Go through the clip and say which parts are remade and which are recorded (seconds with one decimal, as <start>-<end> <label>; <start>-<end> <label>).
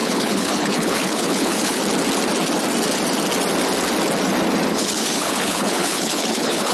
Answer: 0.0-1.8 remade; 1.8-4.7 recorded; 4.7-6.7 remade